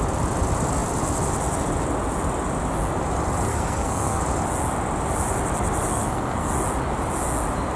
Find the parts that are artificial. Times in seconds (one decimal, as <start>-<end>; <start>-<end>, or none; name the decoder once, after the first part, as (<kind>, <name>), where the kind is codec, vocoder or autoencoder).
3.5-4.2 (codec, SNAC); 5.9-6.5